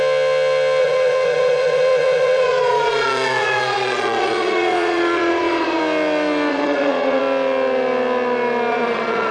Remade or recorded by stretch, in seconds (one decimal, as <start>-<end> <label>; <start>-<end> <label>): 0.0-0.8 recorded; 0.8-5.8 remade; 5.8-6.5 recorded; 6.5-7.2 remade; 7.2-8.7 recorded; 8.7-9.3 remade